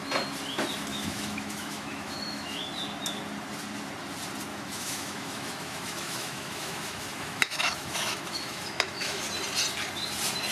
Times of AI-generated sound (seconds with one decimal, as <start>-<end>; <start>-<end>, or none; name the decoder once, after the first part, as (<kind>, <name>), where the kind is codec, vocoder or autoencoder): 0.9-2.6 (autoencoder, DAC-VAE); 4.5-9.2